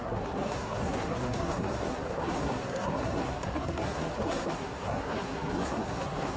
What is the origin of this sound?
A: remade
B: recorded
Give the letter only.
A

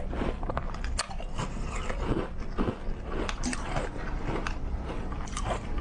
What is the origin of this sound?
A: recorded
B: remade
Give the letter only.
A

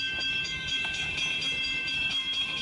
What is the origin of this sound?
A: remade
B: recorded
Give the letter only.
A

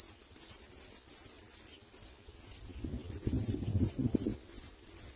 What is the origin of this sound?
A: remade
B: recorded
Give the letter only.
B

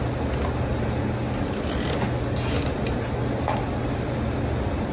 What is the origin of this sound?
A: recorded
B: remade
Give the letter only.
A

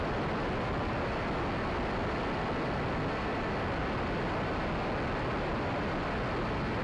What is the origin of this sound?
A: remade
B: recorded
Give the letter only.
B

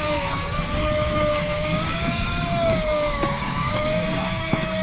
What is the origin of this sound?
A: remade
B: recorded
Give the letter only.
A